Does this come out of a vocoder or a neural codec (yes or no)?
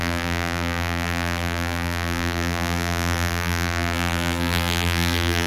yes